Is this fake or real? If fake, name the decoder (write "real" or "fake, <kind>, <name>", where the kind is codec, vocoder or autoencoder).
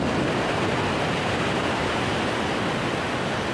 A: real